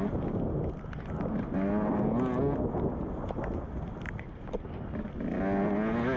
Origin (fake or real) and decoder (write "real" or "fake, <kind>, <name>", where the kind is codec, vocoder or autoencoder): real